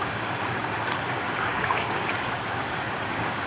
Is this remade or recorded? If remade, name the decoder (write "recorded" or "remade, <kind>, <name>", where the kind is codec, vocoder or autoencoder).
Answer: remade, codec, DAC